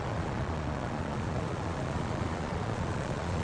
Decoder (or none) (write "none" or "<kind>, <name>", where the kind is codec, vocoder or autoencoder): vocoder, Vocos